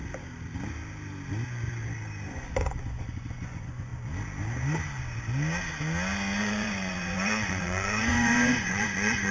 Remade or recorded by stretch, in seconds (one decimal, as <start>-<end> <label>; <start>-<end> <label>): 0.0-2.3 recorded; 2.3-3.9 remade; 3.9-6.4 recorded; 6.4-9.3 remade